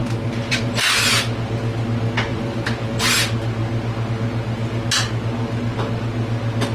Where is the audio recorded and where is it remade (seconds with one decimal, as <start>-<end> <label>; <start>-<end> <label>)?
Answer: 0.0-1.6 remade; 1.6-2.3 recorded; 2.3-3.0 remade; 3.0-6.7 recorded